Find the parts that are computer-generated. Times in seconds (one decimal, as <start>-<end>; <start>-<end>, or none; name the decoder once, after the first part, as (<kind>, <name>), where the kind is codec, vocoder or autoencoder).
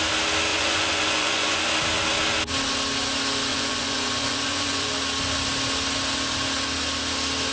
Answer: 0.5-1.6 (vocoder, Vocos); 3.5-4.9